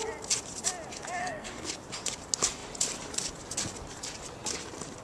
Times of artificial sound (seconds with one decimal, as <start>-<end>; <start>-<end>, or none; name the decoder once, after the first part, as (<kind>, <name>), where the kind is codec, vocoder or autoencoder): 1.2-1.7 (codec, SNAC)